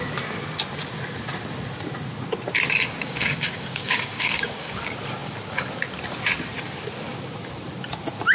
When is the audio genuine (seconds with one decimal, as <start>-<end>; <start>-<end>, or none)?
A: 0.0-3.0; 4.7-8.3